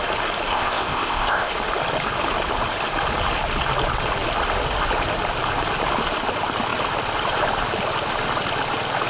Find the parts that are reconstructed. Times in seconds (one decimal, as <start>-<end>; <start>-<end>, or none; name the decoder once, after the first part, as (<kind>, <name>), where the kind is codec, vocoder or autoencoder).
0.5-1.5 (codec, ZipCodec)